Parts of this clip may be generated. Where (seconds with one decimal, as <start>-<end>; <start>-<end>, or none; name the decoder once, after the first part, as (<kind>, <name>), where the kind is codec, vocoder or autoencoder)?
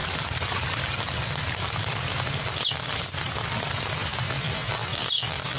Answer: 4.0-5.6 (vocoder, BigVGAN v2)